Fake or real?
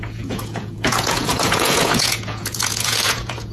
fake